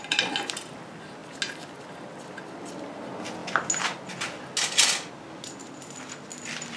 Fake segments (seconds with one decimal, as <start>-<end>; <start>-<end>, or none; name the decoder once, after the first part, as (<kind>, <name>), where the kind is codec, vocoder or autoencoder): none